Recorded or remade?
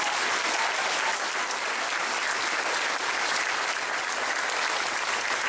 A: recorded